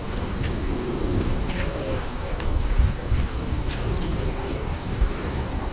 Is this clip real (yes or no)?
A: no